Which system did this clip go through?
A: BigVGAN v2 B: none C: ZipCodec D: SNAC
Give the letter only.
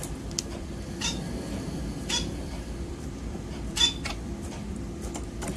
A